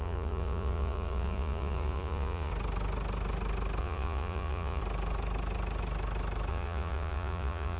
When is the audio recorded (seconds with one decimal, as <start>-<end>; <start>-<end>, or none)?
2.5-3.8; 4.8-6.5